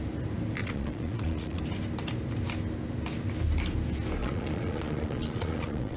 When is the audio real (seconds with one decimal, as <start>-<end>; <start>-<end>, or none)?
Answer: 0.0-0.6; 1.6-4.2